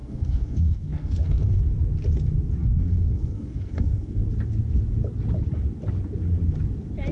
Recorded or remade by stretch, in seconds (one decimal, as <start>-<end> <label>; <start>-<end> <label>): 0.0-1.6 remade; 1.6-2.6 recorded; 2.6-4.2 remade; 4.2-7.1 recorded